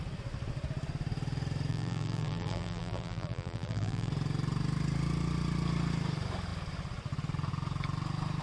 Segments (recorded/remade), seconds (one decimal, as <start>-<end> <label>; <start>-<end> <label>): 0.0-1.7 recorded; 1.7-4.1 remade; 4.1-8.4 recorded